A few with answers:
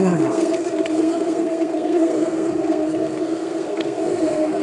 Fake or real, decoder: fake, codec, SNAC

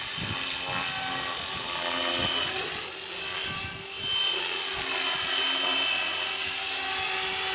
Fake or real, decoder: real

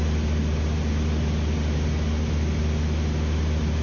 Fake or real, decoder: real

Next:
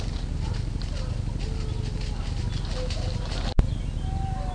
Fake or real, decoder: real